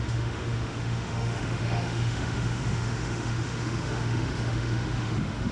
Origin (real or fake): fake